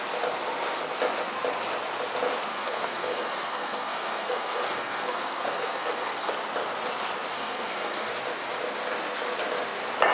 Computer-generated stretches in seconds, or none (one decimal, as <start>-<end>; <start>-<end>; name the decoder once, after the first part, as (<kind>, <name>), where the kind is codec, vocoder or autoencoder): 2.5-6.3 (codec, SNAC); 7.3-8.1